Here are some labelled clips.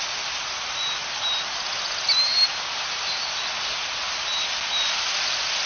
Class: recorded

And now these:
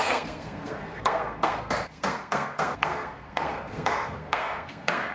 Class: remade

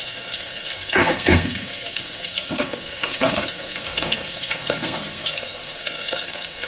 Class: remade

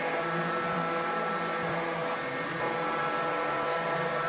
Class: recorded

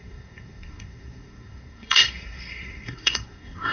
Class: remade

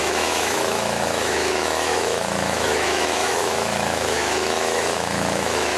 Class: remade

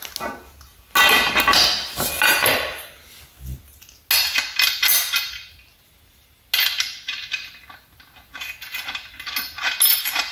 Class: recorded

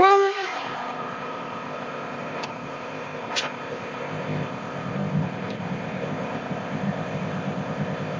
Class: remade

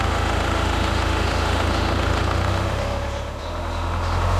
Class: remade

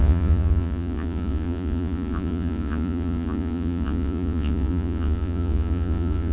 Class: remade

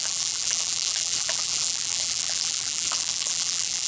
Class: remade